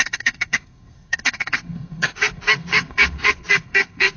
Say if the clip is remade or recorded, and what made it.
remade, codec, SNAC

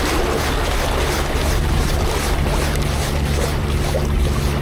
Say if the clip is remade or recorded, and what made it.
recorded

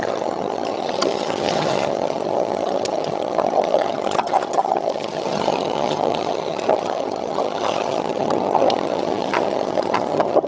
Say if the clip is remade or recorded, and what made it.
remade, vocoder, HiFi-GAN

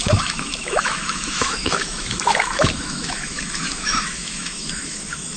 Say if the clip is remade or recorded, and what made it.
remade, autoencoder, DAC-VAE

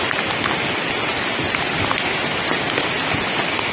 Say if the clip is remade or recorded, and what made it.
recorded